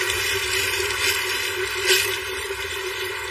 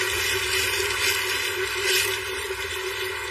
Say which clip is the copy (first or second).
first